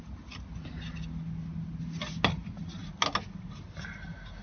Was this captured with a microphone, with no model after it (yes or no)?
yes